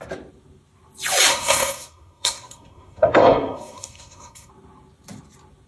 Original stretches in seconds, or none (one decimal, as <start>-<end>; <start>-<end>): 0.0-1.3; 4.5-5.7